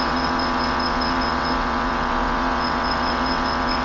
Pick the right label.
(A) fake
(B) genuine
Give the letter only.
A